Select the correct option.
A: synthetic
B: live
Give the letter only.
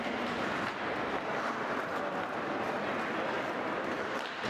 A